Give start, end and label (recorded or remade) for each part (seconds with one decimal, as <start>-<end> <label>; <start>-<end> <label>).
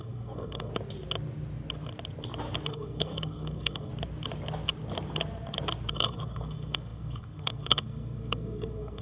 0.0-0.7 remade; 0.7-2.7 recorded; 2.7-3.9 remade; 3.9-5.9 recorded; 5.9-9.0 remade